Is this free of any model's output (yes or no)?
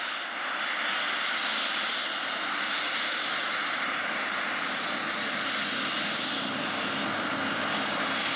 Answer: yes